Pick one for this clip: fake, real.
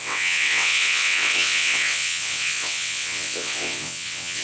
fake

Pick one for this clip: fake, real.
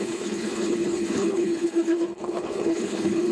fake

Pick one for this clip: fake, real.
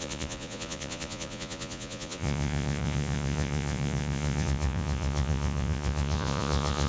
fake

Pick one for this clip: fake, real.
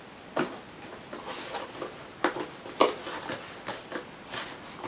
real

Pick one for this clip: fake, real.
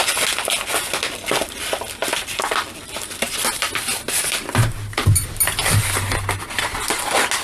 real